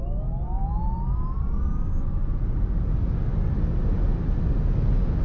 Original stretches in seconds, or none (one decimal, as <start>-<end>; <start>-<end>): 0.0-5.2